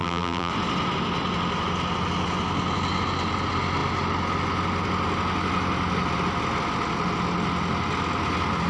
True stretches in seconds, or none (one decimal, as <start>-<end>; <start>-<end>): 0.5-8.7